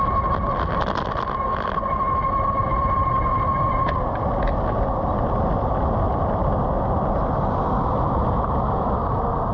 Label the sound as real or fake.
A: real